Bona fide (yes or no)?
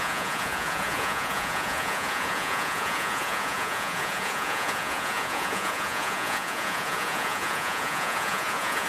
no